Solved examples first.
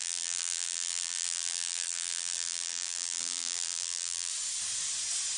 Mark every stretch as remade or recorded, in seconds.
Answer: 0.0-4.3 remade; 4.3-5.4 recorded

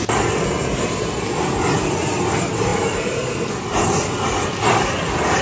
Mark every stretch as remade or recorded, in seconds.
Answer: 0.0-5.4 recorded

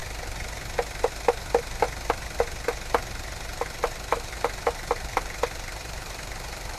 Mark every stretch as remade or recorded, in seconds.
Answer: 0.0-4.1 recorded; 4.1-6.8 remade